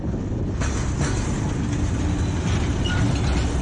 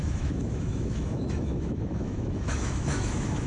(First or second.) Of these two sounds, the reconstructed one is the second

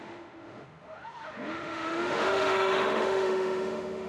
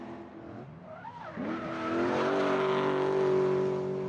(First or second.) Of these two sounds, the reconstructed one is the first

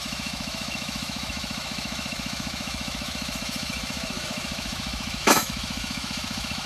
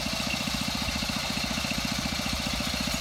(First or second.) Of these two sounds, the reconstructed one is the first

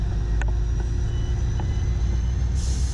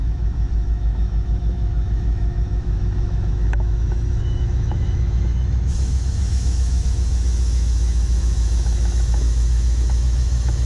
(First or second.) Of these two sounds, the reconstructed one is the second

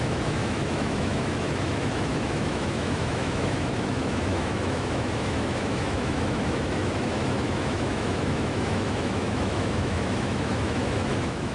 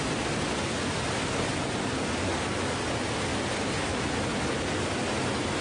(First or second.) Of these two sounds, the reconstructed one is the first